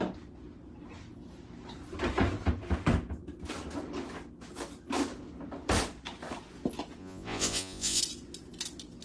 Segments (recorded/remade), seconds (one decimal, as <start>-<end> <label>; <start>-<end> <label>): 0.0-7.0 recorded; 7.0-8.0 remade; 8.0-9.0 recorded